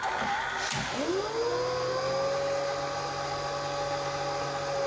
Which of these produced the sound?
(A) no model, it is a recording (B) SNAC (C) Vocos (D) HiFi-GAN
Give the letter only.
A